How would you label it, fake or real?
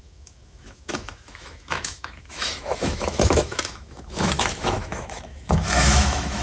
fake